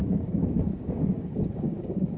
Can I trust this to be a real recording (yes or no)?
no